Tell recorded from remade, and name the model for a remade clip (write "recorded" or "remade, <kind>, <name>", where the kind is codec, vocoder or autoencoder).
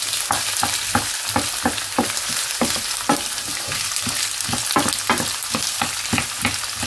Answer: recorded